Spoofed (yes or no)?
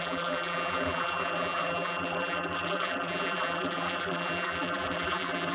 yes